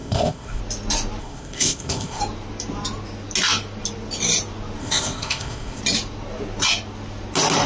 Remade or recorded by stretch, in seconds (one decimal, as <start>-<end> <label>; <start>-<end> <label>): 0.0-0.6 remade; 0.6-1.2 recorded; 1.2-2.2 remade; 2.2-4.8 recorded; 4.8-5.8 remade; 5.8-7.7 recorded